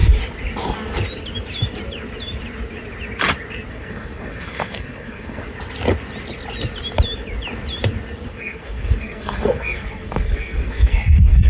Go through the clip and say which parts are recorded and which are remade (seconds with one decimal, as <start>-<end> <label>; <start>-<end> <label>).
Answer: 0.0-3.7 recorded; 3.7-5.4 remade; 5.4-8.3 recorded; 8.3-11.5 remade